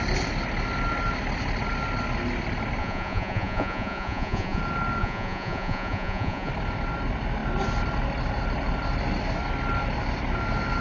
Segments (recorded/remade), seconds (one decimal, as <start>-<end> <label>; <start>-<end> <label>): 0.0-2.8 recorded; 2.8-4.6 remade; 4.6-5.0 recorded; 5.0-6.5 remade; 6.5-10.8 recorded